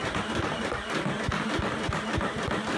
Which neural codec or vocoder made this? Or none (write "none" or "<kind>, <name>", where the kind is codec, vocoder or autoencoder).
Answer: none